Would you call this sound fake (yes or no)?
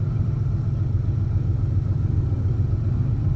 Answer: no